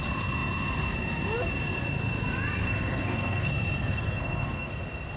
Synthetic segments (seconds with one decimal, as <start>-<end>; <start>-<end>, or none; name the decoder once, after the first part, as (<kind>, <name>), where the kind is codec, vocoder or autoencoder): 2.6-3.5 (codec, SNAC); 3.9-4.7